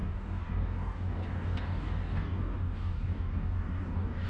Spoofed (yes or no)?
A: yes